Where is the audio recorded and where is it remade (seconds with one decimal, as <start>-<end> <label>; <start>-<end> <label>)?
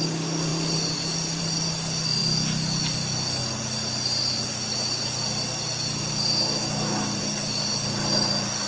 0.0-8.7 recorded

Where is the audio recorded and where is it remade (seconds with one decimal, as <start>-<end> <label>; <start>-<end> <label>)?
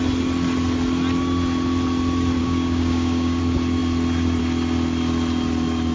0.0-2.4 recorded; 2.4-3.4 remade; 3.4-5.9 recorded